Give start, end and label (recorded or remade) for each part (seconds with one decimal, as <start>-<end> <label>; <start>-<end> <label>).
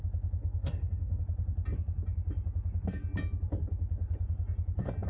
0.0-0.4 recorded; 0.4-1.2 remade; 1.2-5.1 recorded